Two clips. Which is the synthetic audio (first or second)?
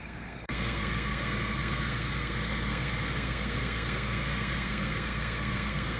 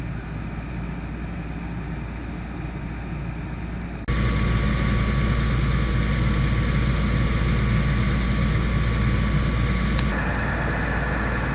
first